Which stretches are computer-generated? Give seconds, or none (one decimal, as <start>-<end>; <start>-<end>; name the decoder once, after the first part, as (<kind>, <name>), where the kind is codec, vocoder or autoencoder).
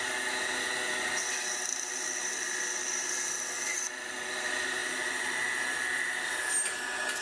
none